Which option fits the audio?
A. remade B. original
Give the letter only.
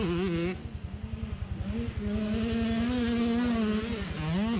B